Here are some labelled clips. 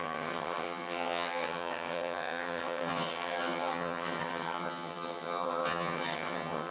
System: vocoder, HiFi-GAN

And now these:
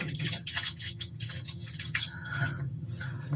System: vocoder, HiFi-GAN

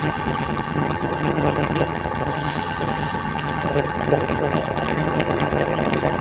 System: vocoder, HiFi-GAN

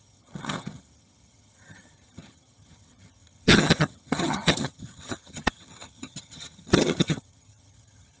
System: vocoder, HiFi-GAN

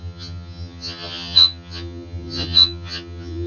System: vocoder, HiFi-GAN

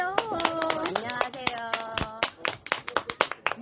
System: none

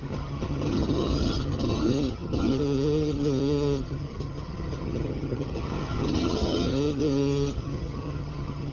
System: vocoder, HiFi-GAN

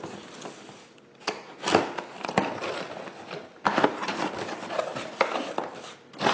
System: none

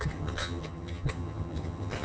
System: vocoder, HiFi-GAN